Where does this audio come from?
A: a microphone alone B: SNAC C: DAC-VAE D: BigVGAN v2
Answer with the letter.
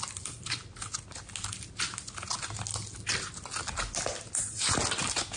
A